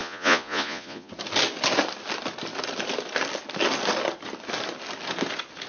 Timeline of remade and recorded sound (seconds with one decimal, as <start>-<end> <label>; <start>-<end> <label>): 0.0-1.1 remade; 1.1-5.7 recorded